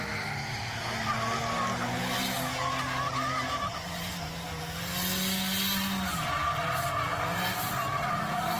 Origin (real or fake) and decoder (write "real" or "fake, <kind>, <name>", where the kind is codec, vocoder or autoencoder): real